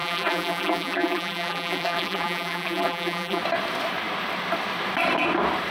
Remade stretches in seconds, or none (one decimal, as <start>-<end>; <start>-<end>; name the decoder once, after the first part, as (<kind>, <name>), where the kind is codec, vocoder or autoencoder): 0.0-3.4 (vocoder, BigVGAN v2)